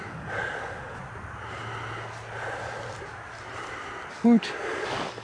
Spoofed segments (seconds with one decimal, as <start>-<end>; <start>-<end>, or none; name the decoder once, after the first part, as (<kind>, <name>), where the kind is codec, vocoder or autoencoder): 0.0-1.0 (codec, DAC); 4.1-5.2